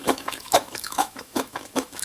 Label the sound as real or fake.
fake